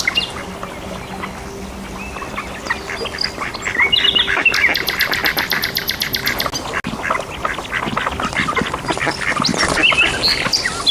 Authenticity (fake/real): real